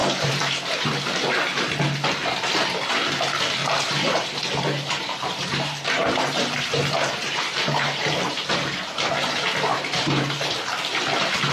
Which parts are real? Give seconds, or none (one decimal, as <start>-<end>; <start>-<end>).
0.9-3.6; 8.1-9.7; 10.5-11.5